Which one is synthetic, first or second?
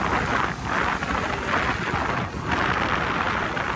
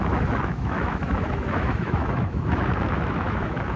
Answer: second